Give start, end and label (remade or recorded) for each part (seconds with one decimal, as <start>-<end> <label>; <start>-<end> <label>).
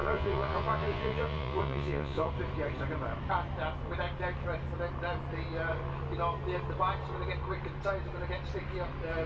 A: 0.0-2.3 remade; 2.3-9.3 recorded